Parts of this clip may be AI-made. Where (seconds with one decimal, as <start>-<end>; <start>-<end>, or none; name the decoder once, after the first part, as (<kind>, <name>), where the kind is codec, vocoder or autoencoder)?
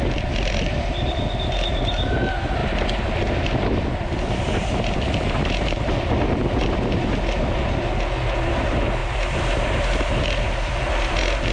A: none